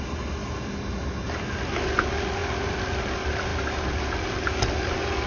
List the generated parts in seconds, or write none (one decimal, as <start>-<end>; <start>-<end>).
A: none